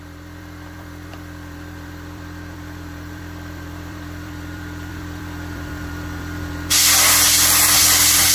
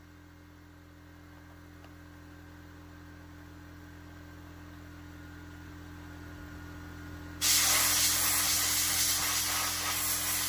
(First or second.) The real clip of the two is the second